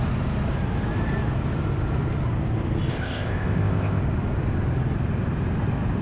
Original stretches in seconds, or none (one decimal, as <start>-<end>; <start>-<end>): 0.0-2.9; 4.0-6.0

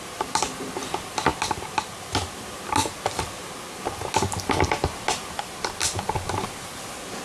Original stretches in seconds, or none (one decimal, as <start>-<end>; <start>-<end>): 0.0-7.2

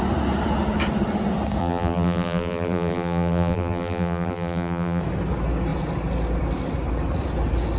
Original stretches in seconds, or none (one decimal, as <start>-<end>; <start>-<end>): 0.0-1.6; 5.0-7.8

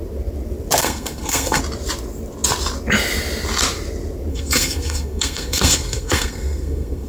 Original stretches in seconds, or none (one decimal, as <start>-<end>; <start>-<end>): 0.0-0.8; 1.6-4.3

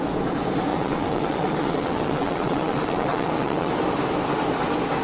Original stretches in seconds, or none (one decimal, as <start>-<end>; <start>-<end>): 0.0-0.7; 3.7-5.0

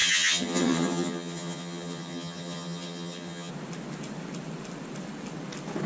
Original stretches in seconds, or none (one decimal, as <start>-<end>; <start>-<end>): 3.5-5.9

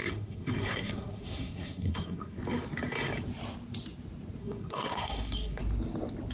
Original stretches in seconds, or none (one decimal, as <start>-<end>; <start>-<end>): 2.4-4.4; 5.6-6.3